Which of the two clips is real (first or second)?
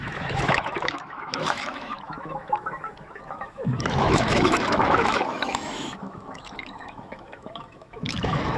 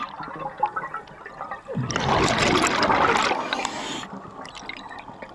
second